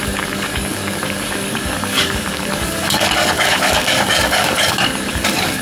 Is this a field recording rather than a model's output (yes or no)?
no